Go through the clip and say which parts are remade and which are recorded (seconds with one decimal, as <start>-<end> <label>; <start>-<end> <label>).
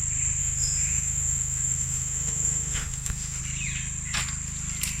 0.0-0.4 recorded; 0.4-3.4 remade; 3.4-5.0 recorded